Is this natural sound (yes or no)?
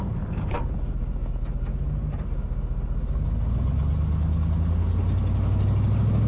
yes